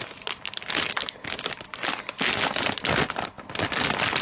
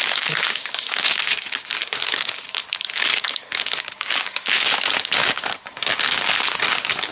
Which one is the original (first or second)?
first